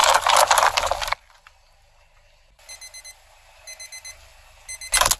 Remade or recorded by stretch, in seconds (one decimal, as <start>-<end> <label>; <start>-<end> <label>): 0.0-5.2 recorded